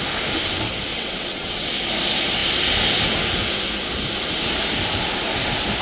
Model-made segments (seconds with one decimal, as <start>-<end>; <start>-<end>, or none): 0.9-1.7